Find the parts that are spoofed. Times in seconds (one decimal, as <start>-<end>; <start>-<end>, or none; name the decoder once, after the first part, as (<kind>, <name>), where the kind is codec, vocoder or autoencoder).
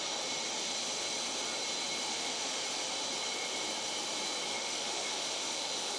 2.1-2.6 (autoencoder, DAC-VAE); 4.5-6.0